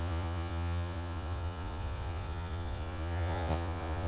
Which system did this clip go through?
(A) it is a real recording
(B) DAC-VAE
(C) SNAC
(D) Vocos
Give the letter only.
D